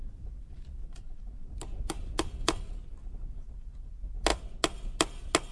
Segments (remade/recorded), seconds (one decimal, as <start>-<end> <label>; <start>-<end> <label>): 0.0-0.8 recorded; 0.8-1.5 remade; 1.5-5.5 recorded